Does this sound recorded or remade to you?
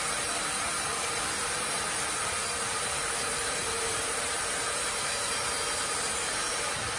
remade